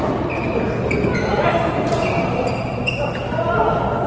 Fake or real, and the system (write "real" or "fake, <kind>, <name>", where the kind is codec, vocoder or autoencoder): real